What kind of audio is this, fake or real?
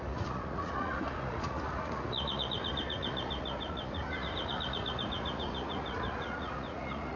fake